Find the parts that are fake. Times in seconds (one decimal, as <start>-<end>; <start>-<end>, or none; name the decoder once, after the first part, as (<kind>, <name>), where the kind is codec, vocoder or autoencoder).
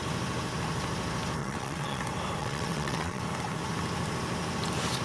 1.4-2.0 (vocoder, WaveNeXt); 2.4-3.2